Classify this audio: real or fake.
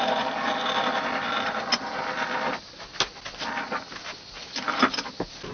real